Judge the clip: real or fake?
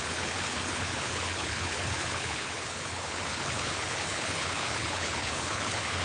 fake